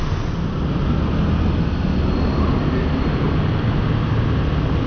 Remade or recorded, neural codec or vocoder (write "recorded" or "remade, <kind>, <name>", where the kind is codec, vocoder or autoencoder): recorded